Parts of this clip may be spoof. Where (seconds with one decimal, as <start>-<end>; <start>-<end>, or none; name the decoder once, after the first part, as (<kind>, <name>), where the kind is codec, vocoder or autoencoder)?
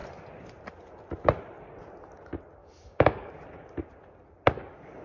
2.6-3.3 (codec, DAC)